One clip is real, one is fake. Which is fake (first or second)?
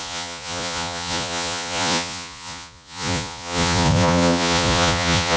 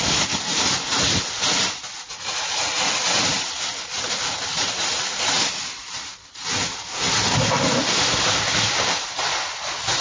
first